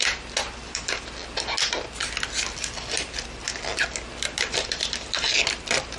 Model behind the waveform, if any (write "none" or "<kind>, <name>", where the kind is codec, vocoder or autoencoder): vocoder, BigVGAN v2